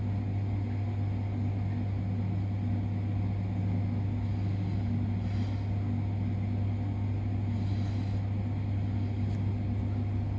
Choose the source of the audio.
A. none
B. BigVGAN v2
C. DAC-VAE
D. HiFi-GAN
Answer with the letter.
A